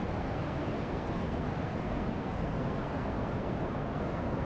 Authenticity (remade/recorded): remade